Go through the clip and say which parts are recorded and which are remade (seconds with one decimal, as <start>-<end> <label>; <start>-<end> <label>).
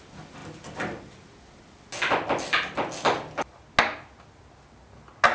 0.0-5.3 recorded